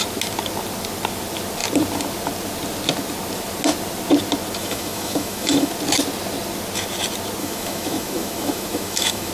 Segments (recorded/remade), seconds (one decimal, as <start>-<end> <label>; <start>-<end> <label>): 0.0-4.6 recorded; 4.6-5.7 remade; 5.7-7.4 recorded; 7.4-9.3 remade